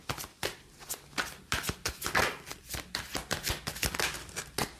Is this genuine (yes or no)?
yes